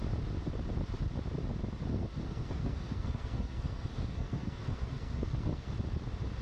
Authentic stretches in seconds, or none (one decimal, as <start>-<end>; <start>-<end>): 0.0-1.9; 5.7-6.4

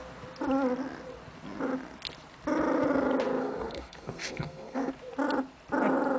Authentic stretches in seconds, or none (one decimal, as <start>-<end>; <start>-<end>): 0.0-3.4; 4.9-6.2

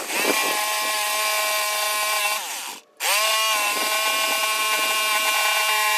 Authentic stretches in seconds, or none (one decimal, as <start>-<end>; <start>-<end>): 0.0-4.4